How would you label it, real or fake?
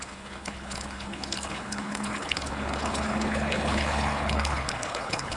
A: fake